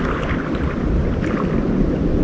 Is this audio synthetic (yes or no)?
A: no